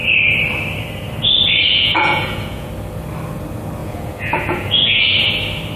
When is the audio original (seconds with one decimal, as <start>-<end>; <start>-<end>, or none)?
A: 0.0-1.7; 2.7-3.8; 5.1-5.8